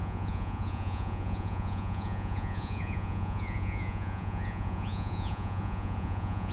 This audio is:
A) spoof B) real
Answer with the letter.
A